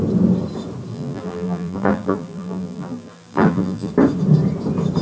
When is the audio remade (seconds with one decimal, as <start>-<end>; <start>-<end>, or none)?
0.9-3.9